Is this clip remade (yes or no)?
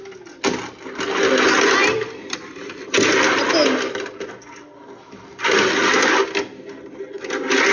no